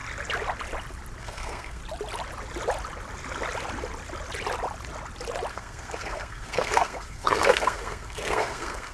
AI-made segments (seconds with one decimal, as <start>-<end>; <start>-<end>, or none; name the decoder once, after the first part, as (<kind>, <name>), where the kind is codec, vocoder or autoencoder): 1.2-1.8 (codec, SNAC); 5.5-8.9